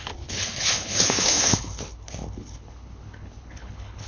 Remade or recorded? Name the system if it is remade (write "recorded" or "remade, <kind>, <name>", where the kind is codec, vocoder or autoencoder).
remade, codec, HILCodec